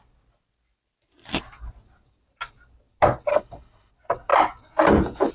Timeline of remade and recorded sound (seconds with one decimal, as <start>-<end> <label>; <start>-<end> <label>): 0.0-3.3 recorded; 3.3-3.9 remade; 3.9-5.3 recorded